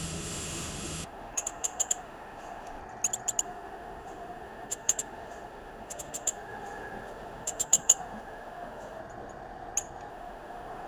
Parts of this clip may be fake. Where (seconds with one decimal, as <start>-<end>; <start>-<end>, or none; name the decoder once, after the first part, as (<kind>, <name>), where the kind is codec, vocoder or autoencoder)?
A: 0.0-2.8 (autoencoder, DAC-VAE); 3.4-9.0; 10.1-10.9